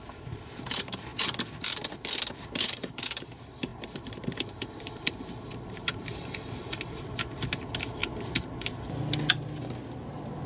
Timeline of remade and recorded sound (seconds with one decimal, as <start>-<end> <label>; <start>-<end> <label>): 0.0-1.1 remade; 1.1-2.3 recorded; 2.3-8.0 remade; 8.0-9.9 recorded; 9.9-10.5 remade